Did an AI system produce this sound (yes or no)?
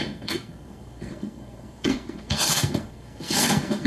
yes